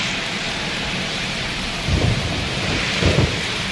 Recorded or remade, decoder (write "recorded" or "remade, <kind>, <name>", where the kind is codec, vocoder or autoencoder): remade, vocoder, BigVGAN v2